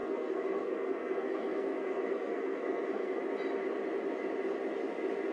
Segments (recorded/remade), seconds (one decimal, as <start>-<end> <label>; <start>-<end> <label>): 0.0-3.2 remade; 3.2-5.3 recorded